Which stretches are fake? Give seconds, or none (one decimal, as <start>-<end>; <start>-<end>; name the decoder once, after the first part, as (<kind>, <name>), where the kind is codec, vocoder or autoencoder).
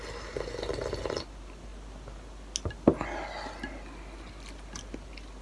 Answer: none